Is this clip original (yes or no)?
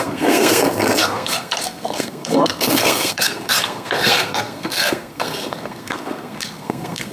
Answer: no